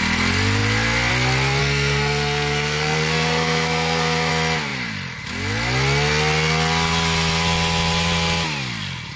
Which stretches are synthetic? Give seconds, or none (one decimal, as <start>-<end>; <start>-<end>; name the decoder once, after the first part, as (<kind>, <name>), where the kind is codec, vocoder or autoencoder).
1.6-4.3 (codec, SNAC)

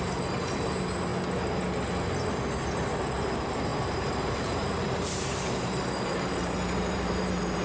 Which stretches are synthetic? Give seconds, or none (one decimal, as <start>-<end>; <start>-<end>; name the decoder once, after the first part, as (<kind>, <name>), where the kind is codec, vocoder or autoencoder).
0.0-1.1 (vocoder, BigVGAN v2); 3.0-7.6

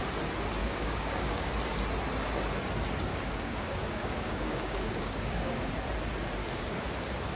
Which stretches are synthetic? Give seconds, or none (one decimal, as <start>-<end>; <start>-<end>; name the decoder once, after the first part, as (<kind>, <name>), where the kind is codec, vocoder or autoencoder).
0.6-1.5 (codec, DAC); 3.1-5.7; 6.4-6.9

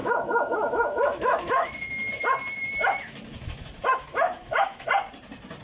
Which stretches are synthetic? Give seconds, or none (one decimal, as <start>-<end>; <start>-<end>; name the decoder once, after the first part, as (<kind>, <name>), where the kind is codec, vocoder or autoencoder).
0.0-2.1 (autoencoder, DAC-VAE); 3.9-4.9

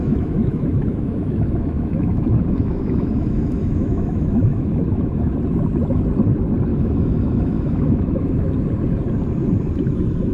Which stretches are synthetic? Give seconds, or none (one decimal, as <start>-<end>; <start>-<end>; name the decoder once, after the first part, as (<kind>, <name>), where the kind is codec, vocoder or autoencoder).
0.0-5.3 (autoencoder, DAC-VAE); 6.7-8.5

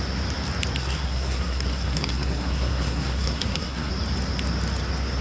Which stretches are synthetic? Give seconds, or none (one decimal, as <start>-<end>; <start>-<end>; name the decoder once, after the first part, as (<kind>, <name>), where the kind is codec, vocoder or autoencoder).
0.8-3.9 (codec, SNAC)

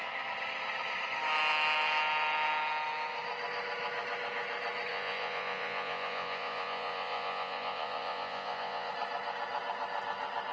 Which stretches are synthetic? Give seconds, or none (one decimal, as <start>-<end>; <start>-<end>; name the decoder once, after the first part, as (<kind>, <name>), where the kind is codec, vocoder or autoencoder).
4.9-8.9 (vocoder, Vocos)